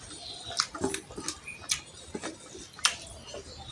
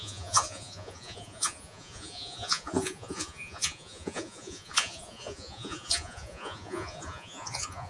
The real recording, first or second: first